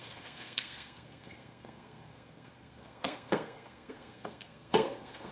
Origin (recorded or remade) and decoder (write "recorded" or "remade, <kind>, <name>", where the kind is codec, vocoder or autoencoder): remade, codec, SNAC